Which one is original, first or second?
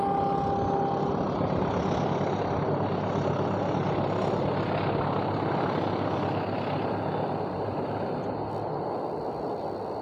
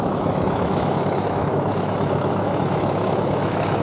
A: first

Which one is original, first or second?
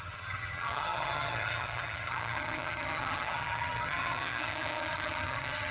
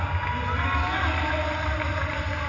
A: second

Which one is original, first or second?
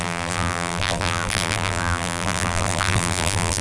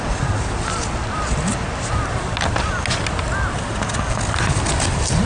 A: second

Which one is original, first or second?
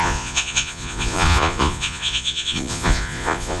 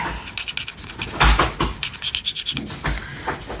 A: second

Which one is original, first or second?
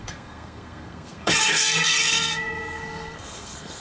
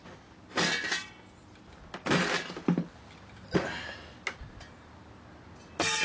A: second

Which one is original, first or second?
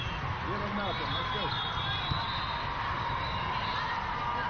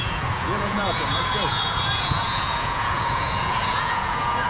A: first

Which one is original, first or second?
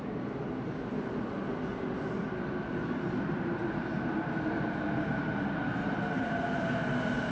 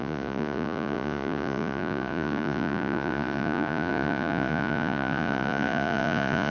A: first